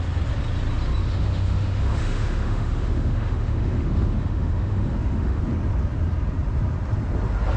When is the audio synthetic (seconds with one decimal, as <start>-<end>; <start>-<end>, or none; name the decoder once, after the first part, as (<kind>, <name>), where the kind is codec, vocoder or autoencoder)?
1.0-5.4 (autoencoder, DAC-VAE)